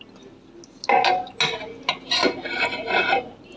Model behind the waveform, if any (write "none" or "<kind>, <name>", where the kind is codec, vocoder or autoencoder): none